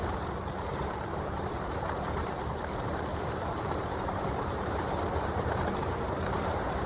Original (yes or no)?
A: no